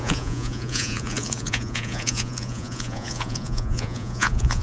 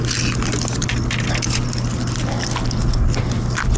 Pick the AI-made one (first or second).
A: first